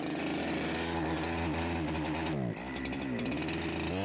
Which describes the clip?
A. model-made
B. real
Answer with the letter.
B